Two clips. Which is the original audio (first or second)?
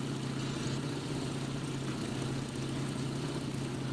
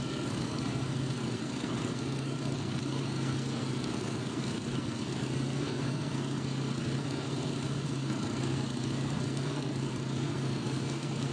first